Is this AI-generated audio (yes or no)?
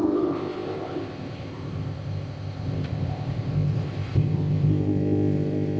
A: yes